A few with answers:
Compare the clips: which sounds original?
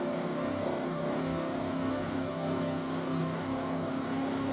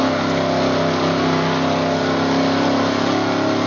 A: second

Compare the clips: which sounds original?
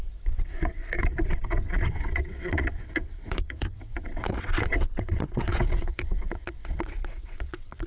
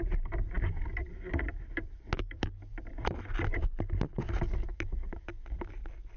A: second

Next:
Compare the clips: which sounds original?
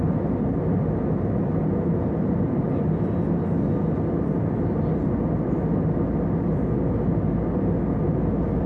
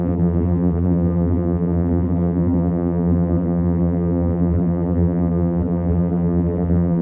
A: first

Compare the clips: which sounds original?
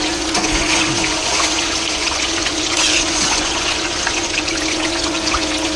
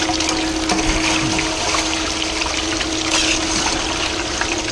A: second